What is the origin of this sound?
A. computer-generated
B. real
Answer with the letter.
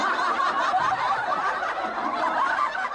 B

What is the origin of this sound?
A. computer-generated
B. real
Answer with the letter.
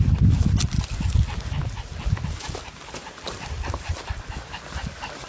B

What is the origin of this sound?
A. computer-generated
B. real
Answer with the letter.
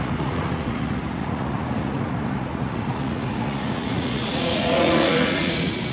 A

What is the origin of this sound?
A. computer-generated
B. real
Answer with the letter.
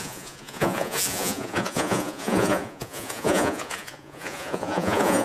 A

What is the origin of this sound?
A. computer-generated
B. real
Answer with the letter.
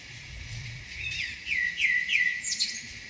A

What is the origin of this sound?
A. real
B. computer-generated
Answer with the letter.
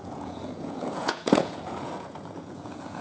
B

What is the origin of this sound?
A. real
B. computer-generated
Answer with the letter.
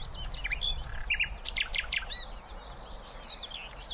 A